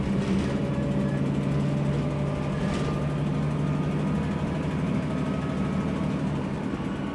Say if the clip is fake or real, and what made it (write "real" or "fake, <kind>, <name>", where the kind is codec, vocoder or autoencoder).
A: real